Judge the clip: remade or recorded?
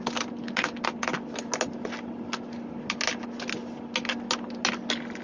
recorded